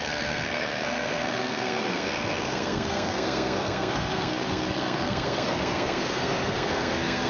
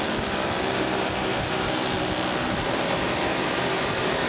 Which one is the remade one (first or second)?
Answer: first